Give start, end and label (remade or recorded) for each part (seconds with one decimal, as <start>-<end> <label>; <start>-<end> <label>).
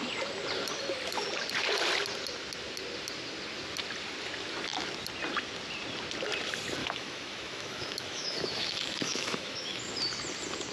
0.0-6.8 recorded; 6.8-9.8 remade; 9.8-10.7 recorded